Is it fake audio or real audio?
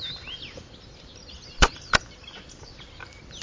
real